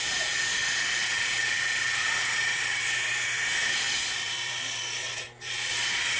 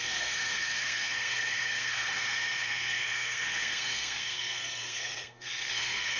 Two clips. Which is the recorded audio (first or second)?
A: first